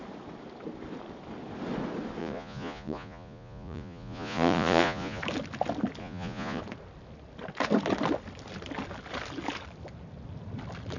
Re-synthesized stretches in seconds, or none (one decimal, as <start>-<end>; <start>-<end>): 2.2-5.2; 6.0-6.6